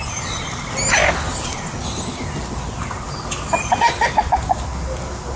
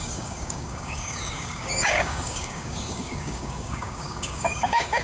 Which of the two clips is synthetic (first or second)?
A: second